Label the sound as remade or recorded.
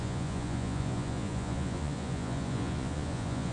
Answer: remade